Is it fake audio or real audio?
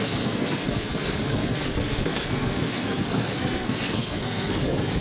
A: fake